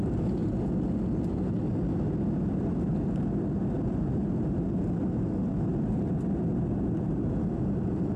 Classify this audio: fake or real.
real